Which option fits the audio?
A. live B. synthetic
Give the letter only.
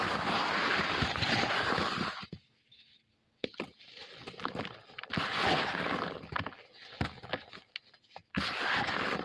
A